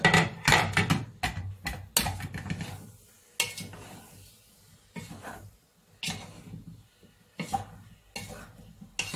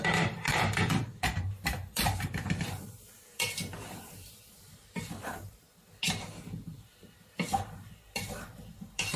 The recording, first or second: first